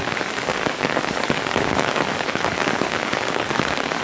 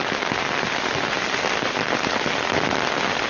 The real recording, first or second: second